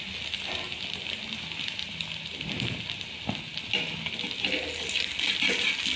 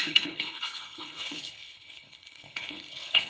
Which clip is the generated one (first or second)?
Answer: second